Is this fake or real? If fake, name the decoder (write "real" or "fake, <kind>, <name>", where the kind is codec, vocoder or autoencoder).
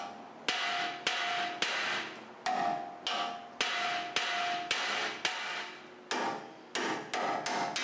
real